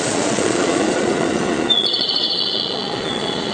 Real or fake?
fake